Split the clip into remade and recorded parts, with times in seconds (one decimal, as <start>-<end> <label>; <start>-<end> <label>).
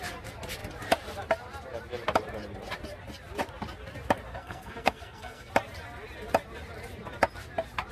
0.0-4.3 recorded; 4.3-5.5 remade; 5.5-7.9 recorded